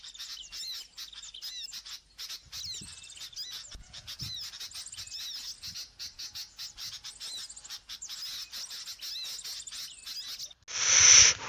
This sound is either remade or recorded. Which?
recorded